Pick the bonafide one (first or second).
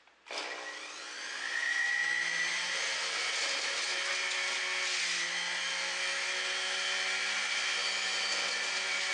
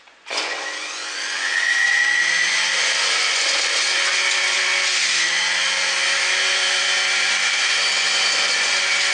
first